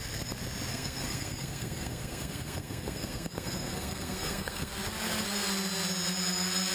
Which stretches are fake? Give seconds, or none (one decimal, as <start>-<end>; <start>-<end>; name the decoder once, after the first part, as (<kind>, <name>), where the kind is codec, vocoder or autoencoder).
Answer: 0.7-4.7 (codec, SNAC)